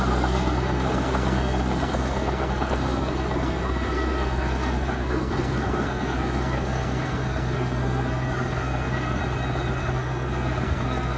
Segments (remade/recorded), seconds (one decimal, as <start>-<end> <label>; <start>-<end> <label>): 0.0-9.2 remade; 9.2-9.8 recorded; 9.8-11.2 remade